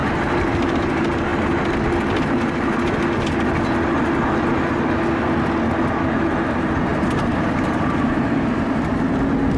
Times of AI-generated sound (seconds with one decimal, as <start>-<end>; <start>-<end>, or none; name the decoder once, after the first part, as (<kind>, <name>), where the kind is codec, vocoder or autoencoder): 0.0-0.9 (vocoder, BigVGAN v2); 6.9-9.2